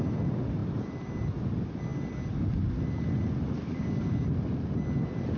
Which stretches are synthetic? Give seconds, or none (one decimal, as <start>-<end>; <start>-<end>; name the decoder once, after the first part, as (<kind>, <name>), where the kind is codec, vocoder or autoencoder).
none